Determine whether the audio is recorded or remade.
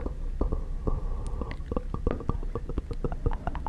recorded